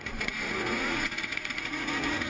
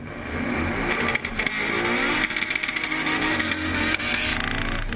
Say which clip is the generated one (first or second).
first